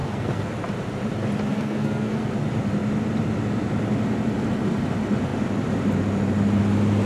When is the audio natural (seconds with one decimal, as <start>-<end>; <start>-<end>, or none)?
0.5-1.5; 2.3-7.1